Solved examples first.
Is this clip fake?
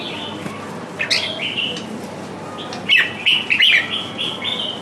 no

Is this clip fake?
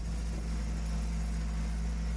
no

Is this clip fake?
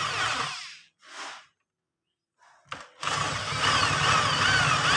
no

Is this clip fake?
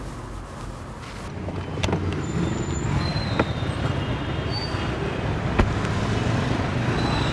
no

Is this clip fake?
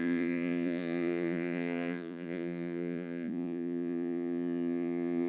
yes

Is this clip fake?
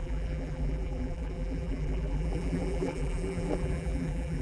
yes